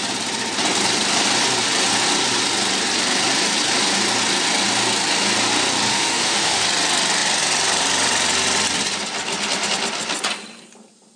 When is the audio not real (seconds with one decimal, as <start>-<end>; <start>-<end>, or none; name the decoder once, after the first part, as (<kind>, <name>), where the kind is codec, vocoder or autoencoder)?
5.9-6.6 (autoencoder, DAC-VAE)